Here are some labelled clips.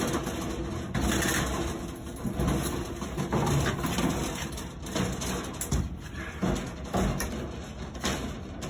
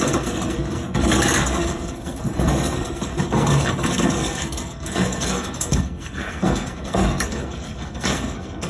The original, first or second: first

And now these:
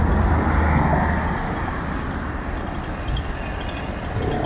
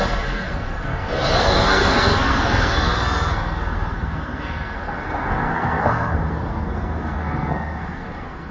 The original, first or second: first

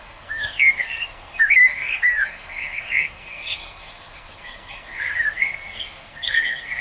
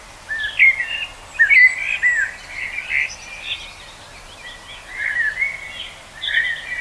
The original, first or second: second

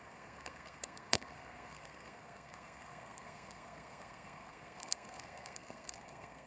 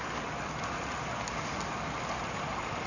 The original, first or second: second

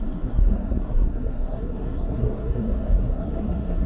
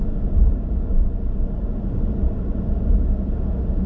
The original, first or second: second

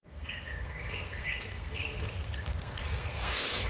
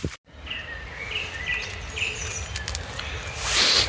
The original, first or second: second